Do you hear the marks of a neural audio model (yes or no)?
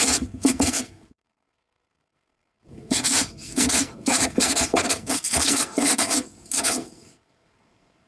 yes